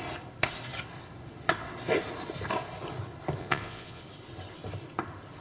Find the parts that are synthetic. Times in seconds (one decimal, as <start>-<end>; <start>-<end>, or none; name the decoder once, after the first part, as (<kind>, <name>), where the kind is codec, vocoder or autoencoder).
3.4-4.0 (vocoder, Vocos)